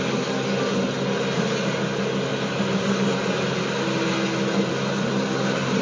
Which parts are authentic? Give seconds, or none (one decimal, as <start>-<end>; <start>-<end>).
0.0-5.8